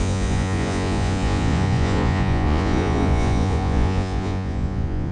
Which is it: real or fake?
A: fake